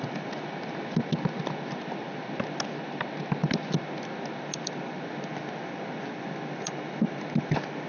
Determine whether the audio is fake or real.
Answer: real